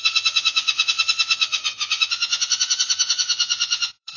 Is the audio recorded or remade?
remade